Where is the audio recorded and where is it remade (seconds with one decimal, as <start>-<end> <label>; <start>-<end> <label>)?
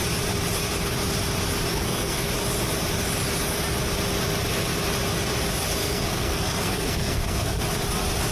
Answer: 0.0-1.7 recorded; 1.7-2.3 remade; 2.3-5.8 recorded; 5.8-7.6 remade; 7.6-8.3 recorded